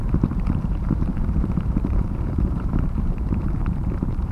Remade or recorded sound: remade